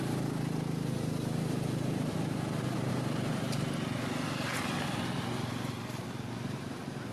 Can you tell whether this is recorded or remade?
recorded